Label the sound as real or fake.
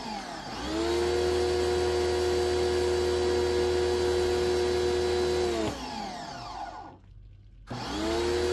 real